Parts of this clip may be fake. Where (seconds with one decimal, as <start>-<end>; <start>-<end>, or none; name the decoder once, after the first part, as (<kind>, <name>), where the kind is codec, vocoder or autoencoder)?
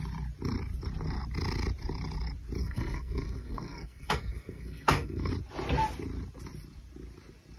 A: 2.6-5.3 (codec, SNAC)